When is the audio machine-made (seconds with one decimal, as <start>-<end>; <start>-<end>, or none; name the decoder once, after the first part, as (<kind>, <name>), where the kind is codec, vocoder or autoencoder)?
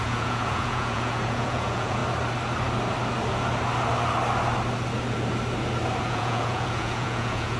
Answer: 0.0-2.0 (vocoder, Vocos); 6.0-7.6